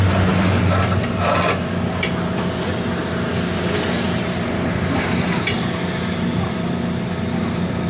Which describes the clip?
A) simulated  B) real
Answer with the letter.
B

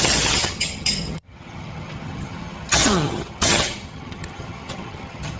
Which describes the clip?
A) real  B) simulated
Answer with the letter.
B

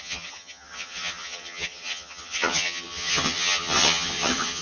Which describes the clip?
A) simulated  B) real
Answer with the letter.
A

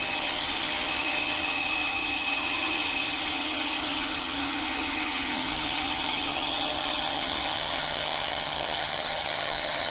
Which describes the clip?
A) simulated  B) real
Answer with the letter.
A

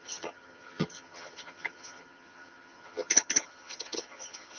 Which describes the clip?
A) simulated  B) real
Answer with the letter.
A